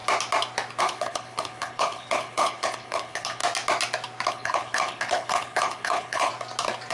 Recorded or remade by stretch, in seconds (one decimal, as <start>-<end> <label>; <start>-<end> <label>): 0.0-0.8 recorded; 0.8-3.4 remade; 3.4-4.3 recorded; 4.3-6.3 remade; 6.3-6.9 recorded